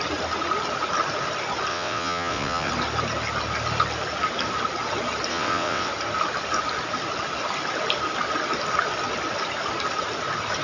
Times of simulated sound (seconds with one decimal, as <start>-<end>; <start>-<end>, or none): 1.7-2.7; 5.3-5.9